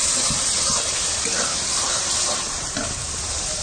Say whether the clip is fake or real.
real